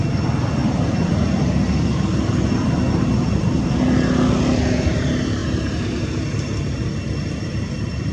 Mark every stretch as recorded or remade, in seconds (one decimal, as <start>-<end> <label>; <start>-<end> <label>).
0.0-8.1 recorded